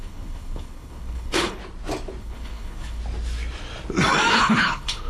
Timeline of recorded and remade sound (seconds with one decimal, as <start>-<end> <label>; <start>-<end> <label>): 0.0-1.6 remade; 1.6-2.2 recorded; 2.2-3.0 remade; 3.0-4.3 recorded; 4.3-5.1 remade